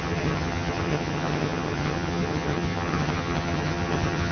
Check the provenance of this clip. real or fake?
fake